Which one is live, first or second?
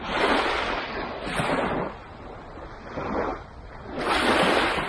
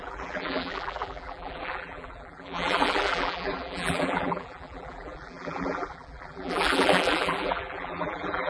first